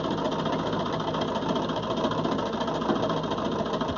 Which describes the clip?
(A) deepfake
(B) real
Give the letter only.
B